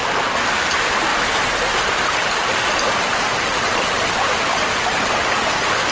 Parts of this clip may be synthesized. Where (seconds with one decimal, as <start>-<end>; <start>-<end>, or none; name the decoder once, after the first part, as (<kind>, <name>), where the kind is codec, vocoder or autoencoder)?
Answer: 1.1-3.9 (vocoder, BigVGAN v2); 4.5-5.1